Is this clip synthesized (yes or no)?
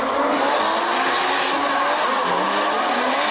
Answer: no